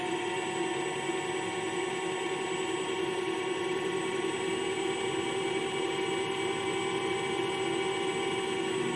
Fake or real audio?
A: real